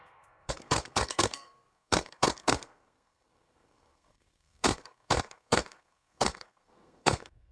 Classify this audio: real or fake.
fake